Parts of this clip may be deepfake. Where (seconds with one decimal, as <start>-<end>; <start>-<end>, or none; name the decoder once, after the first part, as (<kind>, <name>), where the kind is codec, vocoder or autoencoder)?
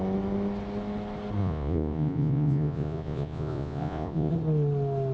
1.4-4.3 (vocoder, Vocos)